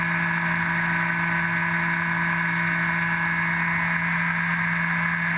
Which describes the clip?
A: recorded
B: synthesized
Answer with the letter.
A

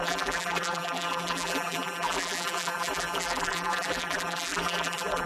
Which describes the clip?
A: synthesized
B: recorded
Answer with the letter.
A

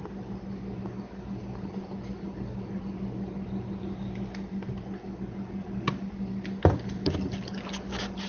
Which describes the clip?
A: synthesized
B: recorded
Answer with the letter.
B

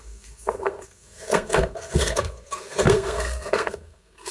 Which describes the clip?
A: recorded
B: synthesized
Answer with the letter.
B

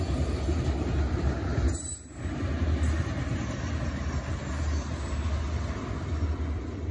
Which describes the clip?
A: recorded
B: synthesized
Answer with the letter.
A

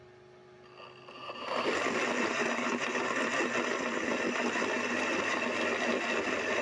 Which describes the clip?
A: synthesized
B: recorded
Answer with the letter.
B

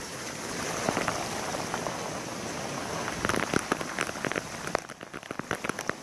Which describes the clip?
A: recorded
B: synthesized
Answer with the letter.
A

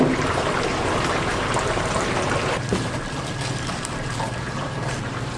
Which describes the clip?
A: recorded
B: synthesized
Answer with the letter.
B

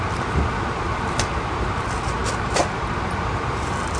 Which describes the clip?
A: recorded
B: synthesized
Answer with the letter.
A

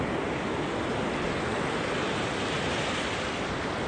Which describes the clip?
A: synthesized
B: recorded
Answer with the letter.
B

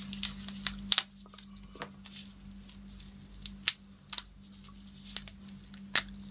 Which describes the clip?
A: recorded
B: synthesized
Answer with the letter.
A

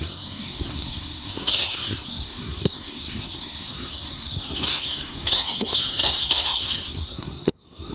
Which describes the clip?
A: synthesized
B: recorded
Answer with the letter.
A